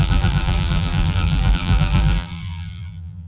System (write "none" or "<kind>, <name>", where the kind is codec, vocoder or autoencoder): vocoder, BigVGAN v2